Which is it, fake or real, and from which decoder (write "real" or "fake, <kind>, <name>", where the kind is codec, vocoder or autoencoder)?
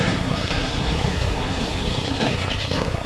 fake, codec, SNAC